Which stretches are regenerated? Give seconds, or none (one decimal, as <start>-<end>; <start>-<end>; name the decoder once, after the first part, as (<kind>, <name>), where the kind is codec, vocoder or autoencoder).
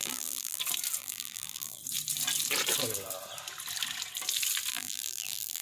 0.0-0.6 (vocoder, BigVGAN v2); 1.0-1.8; 4.7-5.6